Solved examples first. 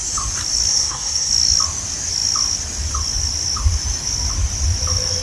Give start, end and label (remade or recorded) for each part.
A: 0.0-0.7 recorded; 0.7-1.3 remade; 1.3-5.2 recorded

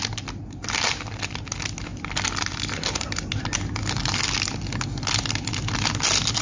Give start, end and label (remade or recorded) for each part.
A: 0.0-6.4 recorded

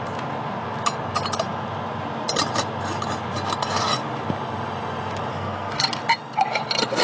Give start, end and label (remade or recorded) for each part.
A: 0.0-5.3 recorded; 5.3-5.9 remade; 5.9-7.0 recorded

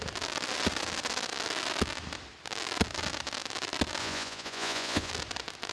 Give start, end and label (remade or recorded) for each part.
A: 0.0-4.0 recorded; 4.0-5.1 remade; 5.1-5.7 recorded

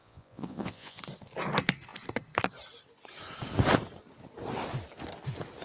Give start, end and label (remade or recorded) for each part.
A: 0.0-1.0 remade; 1.0-5.6 recorded

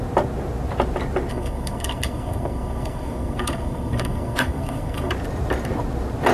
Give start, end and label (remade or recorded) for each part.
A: 0.0-1.3 recorded; 1.3-5.1 remade; 5.1-6.3 recorded

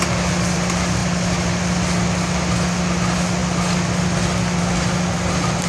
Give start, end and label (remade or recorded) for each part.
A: 0.0-5.7 recorded

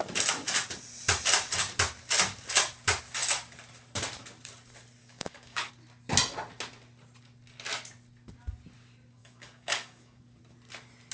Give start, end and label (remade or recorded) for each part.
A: 0.0-5.0 recorded; 5.0-5.7 remade; 5.7-9.2 recorded; 9.2-10.2 remade; 10.2-11.1 recorded